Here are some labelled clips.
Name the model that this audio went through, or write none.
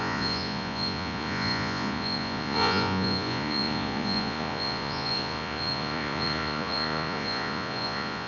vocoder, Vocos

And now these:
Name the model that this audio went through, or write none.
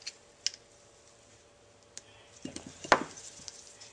none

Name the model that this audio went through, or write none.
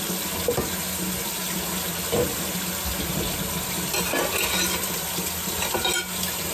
none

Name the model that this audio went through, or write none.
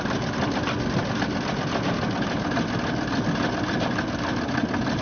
none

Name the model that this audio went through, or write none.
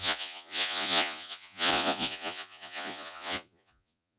vocoder, Vocos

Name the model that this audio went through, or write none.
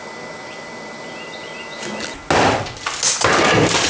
none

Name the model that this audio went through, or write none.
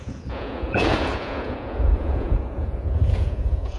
vocoder, Vocos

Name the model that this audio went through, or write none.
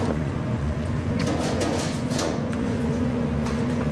vocoder, Vocos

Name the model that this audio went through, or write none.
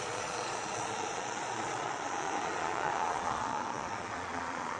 vocoder, Vocos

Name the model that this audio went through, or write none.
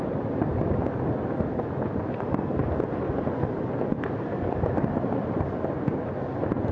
none